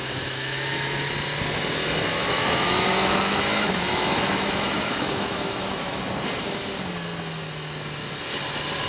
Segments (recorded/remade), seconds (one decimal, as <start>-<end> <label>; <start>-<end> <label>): 0.0-1.1 remade; 1.1-2.1 recorded; 2.1-6.0 remade; 6.0-8.9 recorded